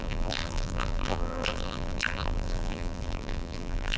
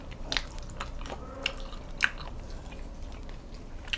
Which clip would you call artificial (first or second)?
first